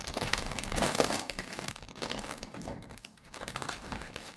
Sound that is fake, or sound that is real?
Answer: fake